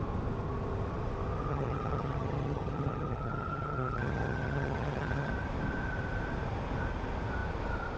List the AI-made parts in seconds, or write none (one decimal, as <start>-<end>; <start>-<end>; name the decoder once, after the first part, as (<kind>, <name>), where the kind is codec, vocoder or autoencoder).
1.5-5.3 (vocoder, HiFi-GAN)